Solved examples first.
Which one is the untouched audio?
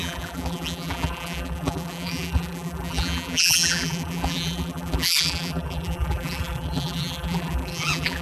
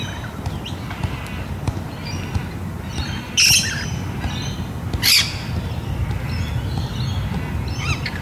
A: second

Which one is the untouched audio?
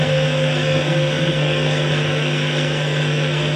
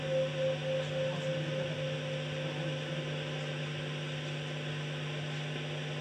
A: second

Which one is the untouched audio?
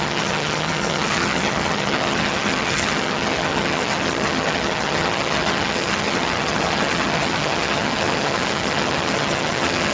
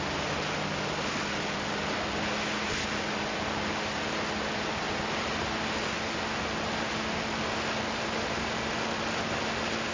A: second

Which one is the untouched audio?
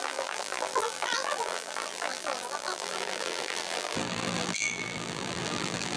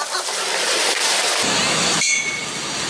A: second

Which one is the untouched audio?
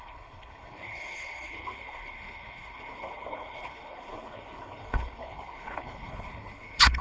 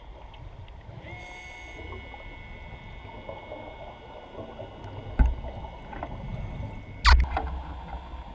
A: second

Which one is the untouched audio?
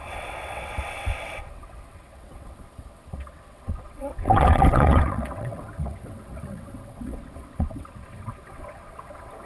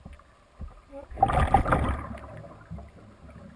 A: second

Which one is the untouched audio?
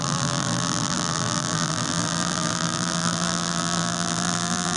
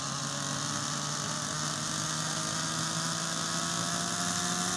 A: second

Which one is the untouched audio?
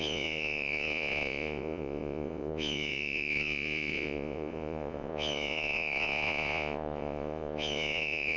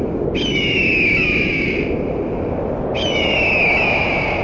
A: second